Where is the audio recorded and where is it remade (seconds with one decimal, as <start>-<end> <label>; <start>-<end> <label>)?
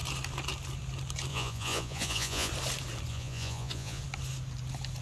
0.0-1.3 recorded; 1.3-2.5 remade; 2.5-3.1 recorded; 3.1-4.0 remade; 4.0-5.0 recorded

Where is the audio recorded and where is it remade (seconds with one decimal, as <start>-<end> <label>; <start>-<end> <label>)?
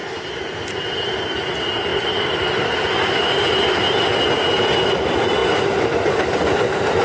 0.0-1.9 recorded; 1.9-2.8 remade; 2.8-5.4 recorded; 5.4-6.6 remade; 6.6-7.0 recorded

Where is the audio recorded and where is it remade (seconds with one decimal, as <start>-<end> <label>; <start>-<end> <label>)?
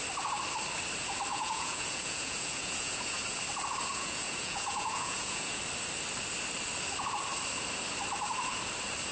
0.0-1.3 recorded; 1.3-3.4 remade; 3.4-3.9 recorded; 3.9-5.6 remade; 5.6-9.1 recorded